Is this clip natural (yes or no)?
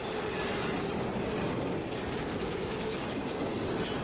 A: yes